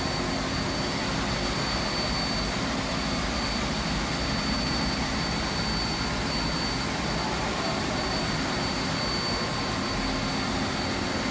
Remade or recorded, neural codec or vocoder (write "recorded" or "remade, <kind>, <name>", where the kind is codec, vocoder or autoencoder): recorded